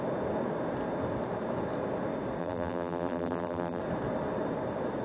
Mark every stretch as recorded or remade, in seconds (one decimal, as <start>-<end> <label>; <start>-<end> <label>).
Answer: 0.0-2.4 recorded; 2.4-3.8 remade; 3.8-5.0 recorded